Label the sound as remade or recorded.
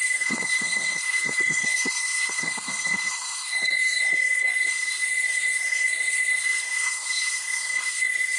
remade